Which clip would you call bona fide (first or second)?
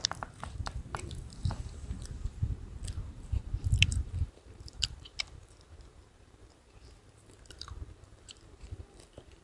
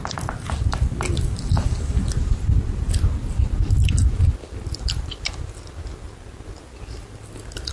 second